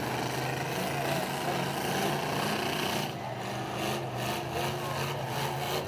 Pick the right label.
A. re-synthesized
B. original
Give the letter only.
B